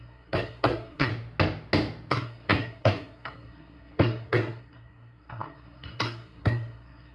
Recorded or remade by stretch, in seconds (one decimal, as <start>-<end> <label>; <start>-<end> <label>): 0.0-1.1 remade; 1.1-2.1 recorded; 2.1-7.1 remade

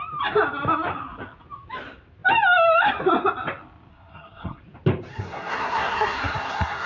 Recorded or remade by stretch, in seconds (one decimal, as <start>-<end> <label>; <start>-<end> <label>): 0.0-3.9 recorded; 3.9-4.6 remade; 4.6-5.1 recorded; 5.1-6.9 remade

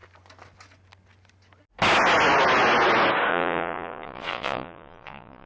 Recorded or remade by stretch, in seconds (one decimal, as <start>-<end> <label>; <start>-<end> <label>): 0.0-3.3 recorded; 3.3-5.5 remade

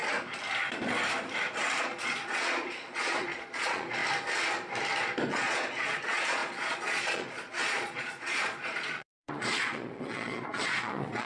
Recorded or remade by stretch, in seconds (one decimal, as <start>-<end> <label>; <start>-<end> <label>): 0.0-1.8 recorded; 1.8-4.0 remade; 4.0-5.3 recorded; 5.3-11.3 remade

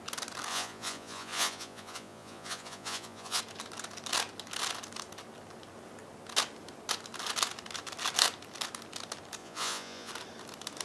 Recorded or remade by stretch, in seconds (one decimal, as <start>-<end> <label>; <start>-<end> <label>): 0.0-0.5 recorded; 0.5-3.4 remade; 3.4-9.4 recorded; 9.4-10.1 remade; 10.1-10.8 recorded

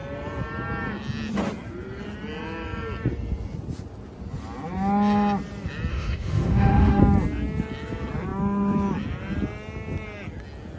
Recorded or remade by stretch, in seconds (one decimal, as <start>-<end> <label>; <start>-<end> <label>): 0.0-5.9 recorded; 5.9-7.0 remade; 7.0-10.8 recorded